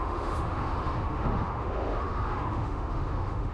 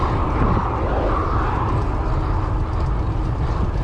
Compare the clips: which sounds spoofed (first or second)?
first